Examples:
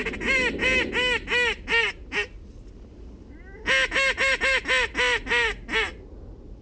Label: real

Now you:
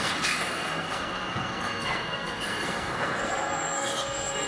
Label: fake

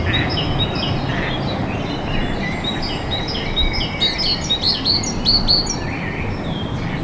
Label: real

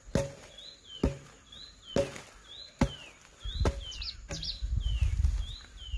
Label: real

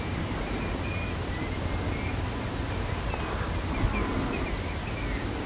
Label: real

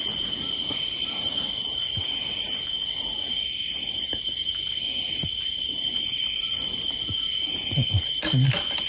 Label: real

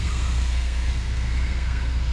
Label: fake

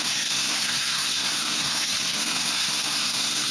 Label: fake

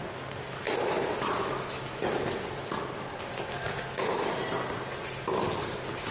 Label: real